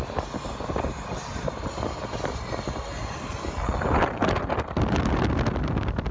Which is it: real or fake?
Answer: real